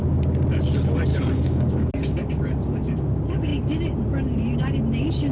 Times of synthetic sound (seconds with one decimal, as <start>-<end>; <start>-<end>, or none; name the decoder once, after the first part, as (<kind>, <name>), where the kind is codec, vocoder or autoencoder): 1.1-1.9 (codec, DAC)